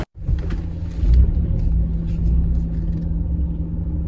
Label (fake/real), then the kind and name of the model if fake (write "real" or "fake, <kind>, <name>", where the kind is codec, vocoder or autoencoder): real